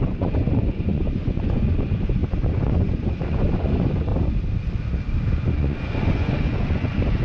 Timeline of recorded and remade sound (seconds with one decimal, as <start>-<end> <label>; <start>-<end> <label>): 0.0-4.1 remade; 4.1-5.2 recorded; 5.2-7.2 remade